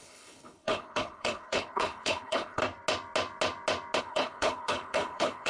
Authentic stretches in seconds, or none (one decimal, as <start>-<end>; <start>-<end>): 2.6-4.0